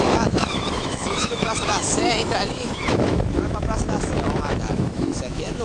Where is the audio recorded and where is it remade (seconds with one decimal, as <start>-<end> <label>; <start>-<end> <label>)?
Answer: 0.0-5.6 remade